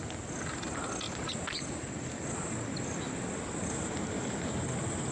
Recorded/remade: recorded